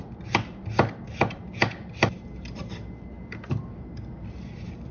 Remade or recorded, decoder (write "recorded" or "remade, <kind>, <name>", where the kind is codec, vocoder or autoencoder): recorded